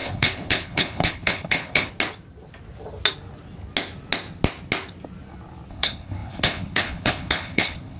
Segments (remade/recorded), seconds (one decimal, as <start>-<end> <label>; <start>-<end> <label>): 0.0-1.9 remade; 1.9-5.7 recorded; 5.7-8.0 remade